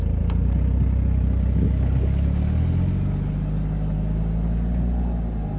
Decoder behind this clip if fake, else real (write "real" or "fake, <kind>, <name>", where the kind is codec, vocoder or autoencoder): real